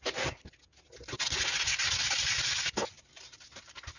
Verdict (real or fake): real